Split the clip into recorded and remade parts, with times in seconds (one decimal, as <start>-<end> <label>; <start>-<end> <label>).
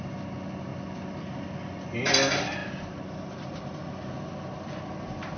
0.0-5.4 recorded